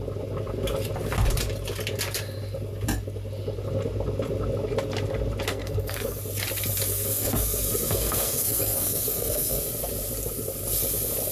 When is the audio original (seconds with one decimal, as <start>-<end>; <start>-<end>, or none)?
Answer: 0.0-5.5; 6.2-6.9; 9.6-11.3